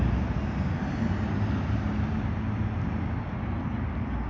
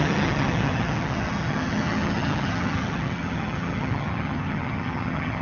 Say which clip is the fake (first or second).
second